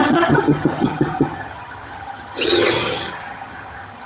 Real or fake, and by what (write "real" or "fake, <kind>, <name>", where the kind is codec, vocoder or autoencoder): fake, vocoder, HiFi-GAN